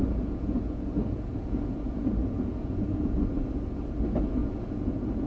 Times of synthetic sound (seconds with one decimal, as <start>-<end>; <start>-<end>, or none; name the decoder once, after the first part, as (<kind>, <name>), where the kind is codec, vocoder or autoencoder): 0.0-3.2 (vocoder, Vocos); 4.4-5.3